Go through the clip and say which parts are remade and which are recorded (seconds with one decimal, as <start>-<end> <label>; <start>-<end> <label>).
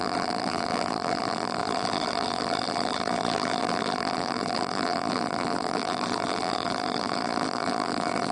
0.0-8.3 remade